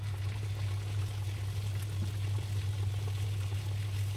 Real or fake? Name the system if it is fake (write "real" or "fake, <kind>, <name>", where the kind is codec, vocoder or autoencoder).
real